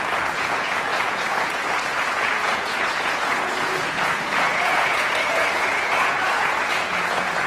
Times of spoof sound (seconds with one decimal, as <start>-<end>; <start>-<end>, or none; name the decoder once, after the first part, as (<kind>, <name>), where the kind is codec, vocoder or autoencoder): 0.0-7.5 (vocoder, Vocos)